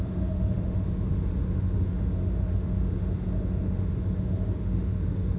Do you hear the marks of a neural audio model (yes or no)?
yes